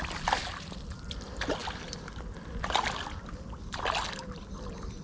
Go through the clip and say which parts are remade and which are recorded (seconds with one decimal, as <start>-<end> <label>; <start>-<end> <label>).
0.0-5.0 recorded